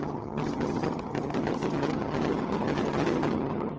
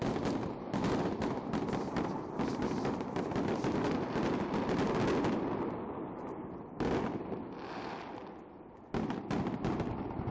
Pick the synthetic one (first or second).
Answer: first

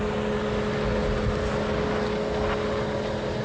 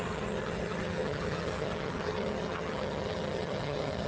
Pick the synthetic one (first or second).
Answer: second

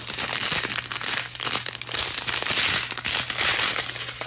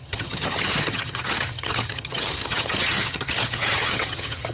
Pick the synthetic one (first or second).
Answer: second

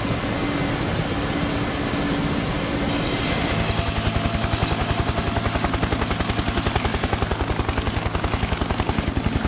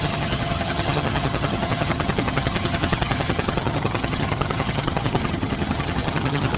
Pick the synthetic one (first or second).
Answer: second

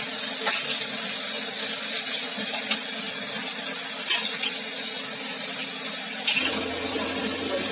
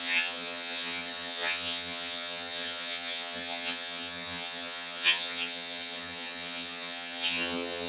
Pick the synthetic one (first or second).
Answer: second